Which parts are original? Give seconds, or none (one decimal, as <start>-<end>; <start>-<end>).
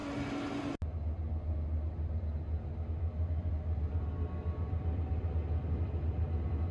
0.0-6.7